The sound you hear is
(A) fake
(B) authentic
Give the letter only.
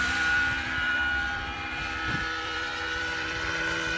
A